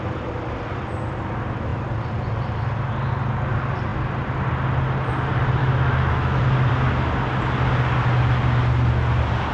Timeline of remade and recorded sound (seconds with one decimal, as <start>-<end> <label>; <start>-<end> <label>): 0.0-5.6 recorded; 5.6-6.4 remade; 6.4-9.5 recorded